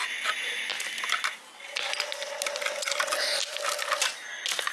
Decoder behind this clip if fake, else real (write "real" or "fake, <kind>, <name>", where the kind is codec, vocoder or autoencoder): real